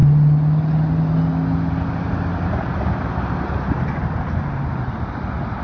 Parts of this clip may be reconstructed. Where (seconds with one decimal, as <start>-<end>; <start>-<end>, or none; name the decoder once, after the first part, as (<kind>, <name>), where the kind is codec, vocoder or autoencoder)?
none